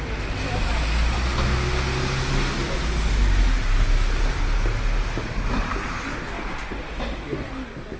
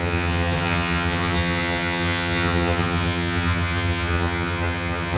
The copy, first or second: second